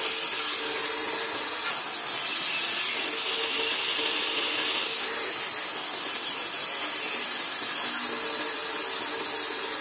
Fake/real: real